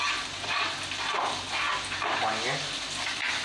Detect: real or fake real